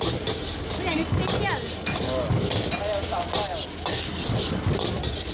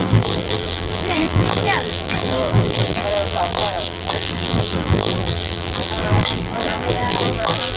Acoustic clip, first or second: first